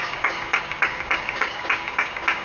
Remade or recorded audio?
remade